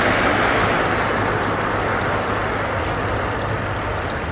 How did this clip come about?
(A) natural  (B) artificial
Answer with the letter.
A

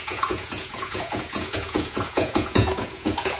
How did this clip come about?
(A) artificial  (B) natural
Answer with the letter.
A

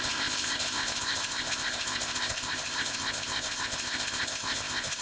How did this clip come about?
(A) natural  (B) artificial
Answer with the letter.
B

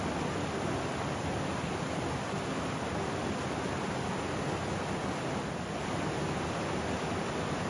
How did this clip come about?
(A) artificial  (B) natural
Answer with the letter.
B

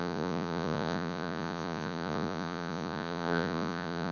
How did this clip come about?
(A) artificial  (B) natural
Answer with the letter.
A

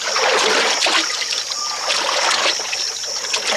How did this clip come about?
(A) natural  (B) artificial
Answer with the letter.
A